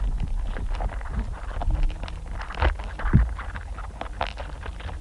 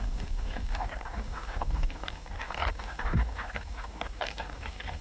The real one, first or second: first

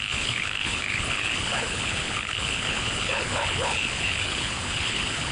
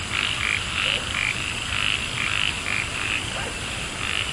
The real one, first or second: second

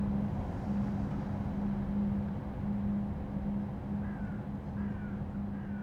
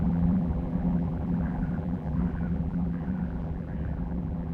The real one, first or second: first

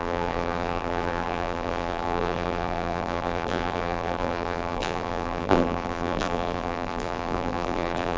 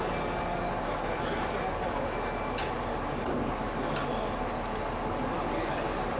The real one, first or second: second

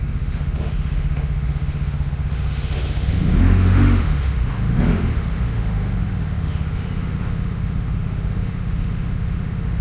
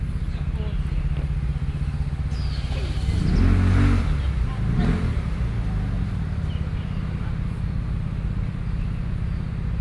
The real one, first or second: second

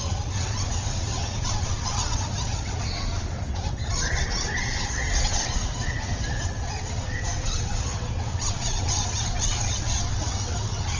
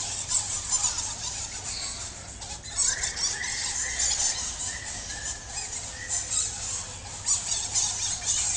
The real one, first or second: second